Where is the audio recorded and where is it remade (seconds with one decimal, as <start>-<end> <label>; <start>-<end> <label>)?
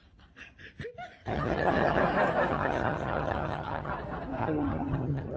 0.0-1.2 recorded; 1.2-2.0 remade; 2.0-2.5 recorded; 2.5-3.9 remade; 3.9-4.4 recorded; 4.4-5.4 remade